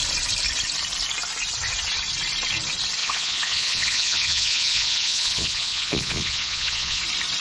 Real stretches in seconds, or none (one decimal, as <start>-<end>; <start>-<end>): 0.0-3.0; 7.0-7.4